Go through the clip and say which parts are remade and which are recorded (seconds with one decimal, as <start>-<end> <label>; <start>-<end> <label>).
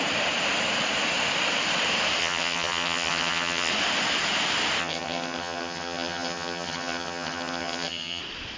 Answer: 0.0-2.2 recorded; 2.2-3.7 remade; 3.7-4.8 recorded; 4.8-8.2 remade; 8.2-8.6 recorded